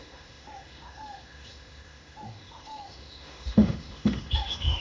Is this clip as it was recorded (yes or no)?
no